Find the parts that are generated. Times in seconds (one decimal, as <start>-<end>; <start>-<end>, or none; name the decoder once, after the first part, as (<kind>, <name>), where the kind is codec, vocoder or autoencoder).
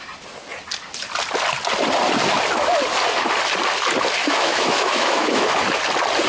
4.2-5.5 (autoencoder, DAC-VAE)